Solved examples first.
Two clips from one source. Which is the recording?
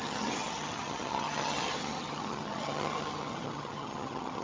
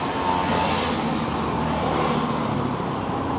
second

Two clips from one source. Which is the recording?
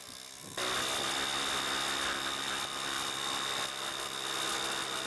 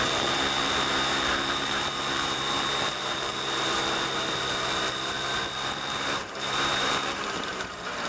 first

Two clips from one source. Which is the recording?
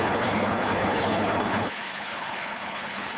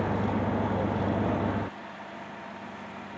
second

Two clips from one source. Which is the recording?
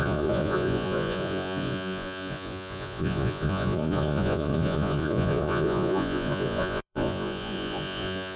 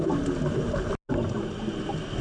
second